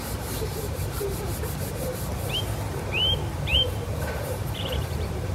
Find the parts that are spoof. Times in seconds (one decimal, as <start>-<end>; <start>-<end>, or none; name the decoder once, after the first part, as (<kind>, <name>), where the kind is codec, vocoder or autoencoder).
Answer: 0.0-2.1 (vocoder, BigVGAN v2); 2.7-5.3